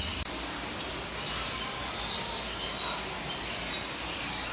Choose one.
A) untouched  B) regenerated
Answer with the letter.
A